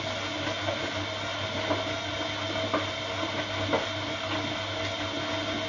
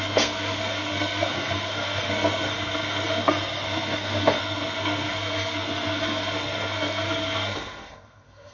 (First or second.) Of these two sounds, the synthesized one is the second